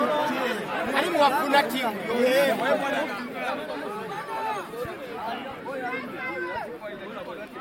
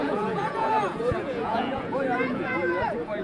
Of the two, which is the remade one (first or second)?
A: second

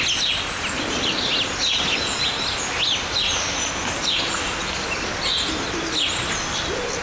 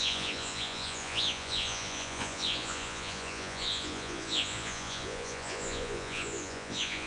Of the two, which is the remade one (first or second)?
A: second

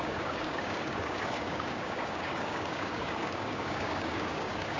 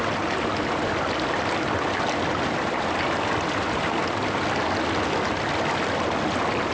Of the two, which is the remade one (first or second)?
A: first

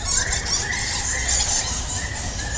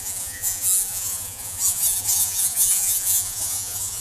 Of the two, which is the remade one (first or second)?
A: second